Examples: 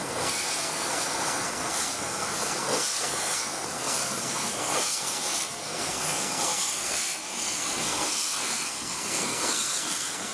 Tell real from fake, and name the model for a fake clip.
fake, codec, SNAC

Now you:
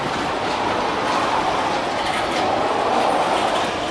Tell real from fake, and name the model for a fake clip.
real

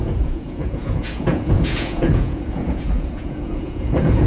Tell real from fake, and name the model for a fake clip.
fake, vocoder, Vocos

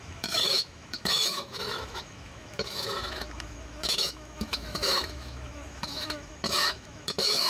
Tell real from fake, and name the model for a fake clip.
fake, autoencoder, DAC-VAE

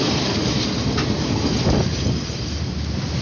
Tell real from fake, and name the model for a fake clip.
real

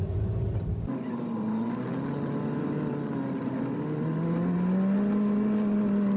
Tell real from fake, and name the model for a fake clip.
real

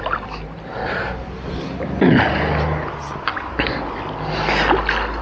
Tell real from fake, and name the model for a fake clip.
real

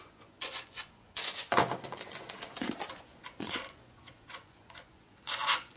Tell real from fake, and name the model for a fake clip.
fake, vocoder, Vocos